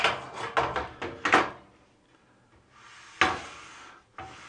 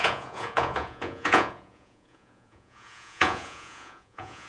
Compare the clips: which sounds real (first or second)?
first